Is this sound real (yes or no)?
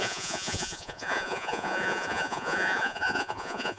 no